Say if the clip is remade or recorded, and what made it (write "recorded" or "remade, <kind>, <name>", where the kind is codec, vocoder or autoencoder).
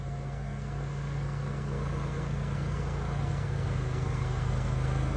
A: remade, codec, SNAC